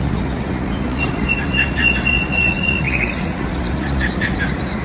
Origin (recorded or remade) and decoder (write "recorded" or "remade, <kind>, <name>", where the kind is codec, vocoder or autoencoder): remade, vocoder, Vocos